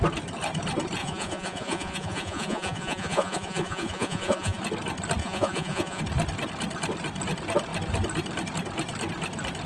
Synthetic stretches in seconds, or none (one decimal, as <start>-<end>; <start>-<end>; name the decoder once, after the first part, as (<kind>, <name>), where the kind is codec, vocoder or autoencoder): 1.0-4.6 (vocoder, Vocos); 5.2-6.0